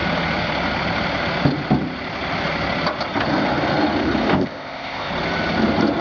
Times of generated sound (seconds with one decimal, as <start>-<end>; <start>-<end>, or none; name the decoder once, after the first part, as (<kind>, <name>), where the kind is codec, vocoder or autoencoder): 4.3-5.1 (codec, ZipCodec)